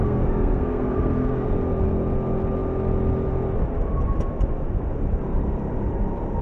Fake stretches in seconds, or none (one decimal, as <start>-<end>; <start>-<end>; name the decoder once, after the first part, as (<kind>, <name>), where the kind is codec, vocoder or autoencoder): 0.0-1.5 (codec, SNAC)